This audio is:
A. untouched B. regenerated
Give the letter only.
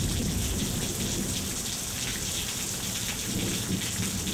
A